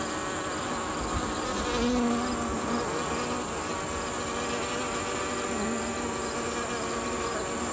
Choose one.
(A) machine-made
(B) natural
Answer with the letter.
B